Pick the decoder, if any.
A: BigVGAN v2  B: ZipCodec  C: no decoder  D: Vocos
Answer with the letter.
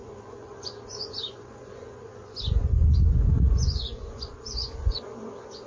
D